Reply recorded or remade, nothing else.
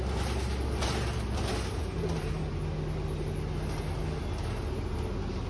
recorded